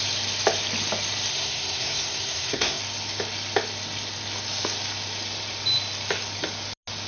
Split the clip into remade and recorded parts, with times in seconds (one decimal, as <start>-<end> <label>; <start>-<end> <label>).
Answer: 0.0-1.3 recorded; 1.3-2.8 remade; 2.8-7.1 recorded